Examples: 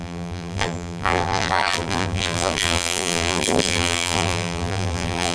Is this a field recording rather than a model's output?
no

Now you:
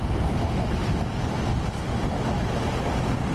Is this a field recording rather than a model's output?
yes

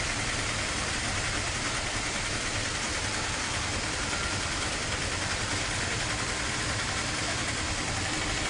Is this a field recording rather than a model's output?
no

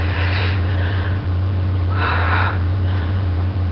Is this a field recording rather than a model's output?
no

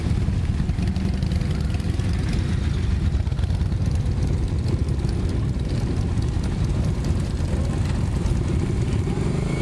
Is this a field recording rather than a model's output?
yes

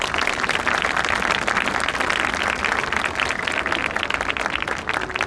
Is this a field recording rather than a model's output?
yes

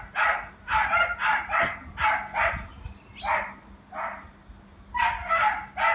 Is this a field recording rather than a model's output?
yes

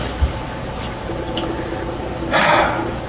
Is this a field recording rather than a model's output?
yes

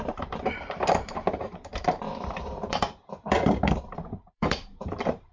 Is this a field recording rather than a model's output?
no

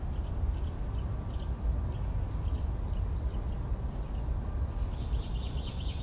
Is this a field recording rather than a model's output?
yes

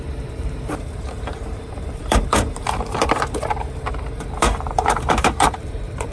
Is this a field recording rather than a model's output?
no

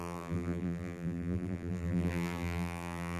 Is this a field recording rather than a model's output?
no